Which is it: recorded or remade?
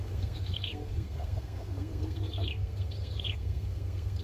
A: remade